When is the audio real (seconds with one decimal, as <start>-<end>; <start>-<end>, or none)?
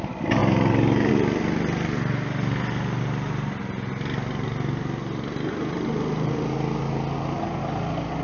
0.0-8.2